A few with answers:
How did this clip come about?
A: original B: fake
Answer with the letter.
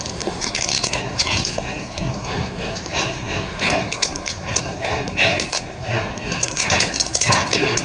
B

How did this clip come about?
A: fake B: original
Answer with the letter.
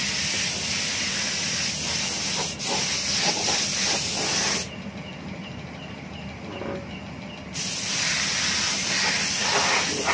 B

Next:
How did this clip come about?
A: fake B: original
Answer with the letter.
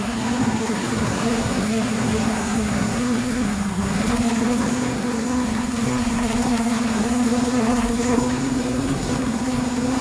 A